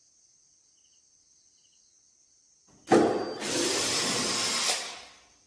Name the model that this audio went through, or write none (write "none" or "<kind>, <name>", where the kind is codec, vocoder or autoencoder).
none